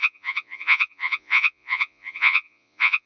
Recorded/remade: remade